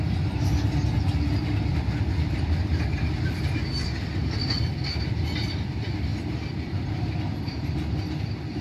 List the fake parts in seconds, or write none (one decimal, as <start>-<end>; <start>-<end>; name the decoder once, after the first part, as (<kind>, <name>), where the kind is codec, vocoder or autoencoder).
1.7-5.1 (vocoder, BigVGAN v2); 6.1-7.1